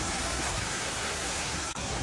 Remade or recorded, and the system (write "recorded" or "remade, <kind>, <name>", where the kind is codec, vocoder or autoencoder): remade, codec, SNAC